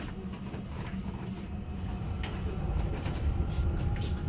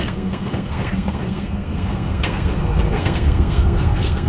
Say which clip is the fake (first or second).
second